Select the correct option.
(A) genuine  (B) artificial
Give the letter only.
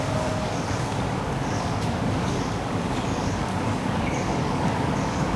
B